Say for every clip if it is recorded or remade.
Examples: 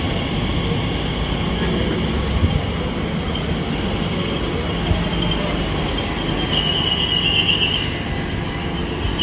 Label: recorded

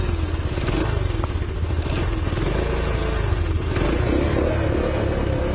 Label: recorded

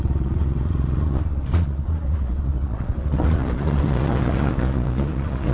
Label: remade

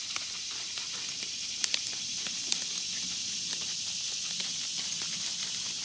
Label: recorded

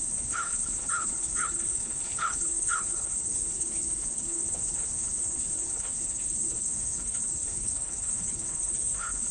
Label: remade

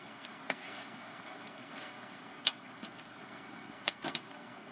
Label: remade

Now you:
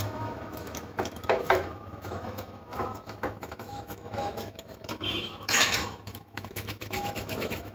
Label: remade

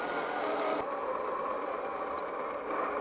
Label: recorded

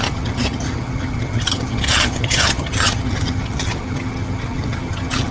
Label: remade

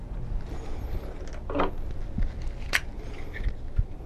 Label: recorded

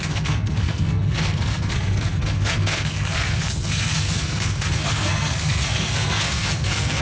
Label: remade